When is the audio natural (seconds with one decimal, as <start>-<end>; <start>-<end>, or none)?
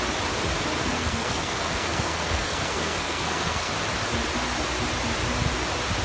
0.0-0.8; 3.7-6.0